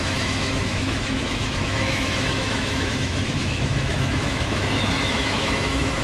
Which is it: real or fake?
fake